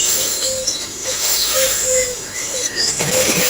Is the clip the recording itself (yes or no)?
no